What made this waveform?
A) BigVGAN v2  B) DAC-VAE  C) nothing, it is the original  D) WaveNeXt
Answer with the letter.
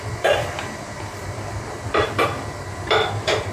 A